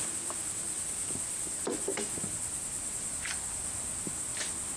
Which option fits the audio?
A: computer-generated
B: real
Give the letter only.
B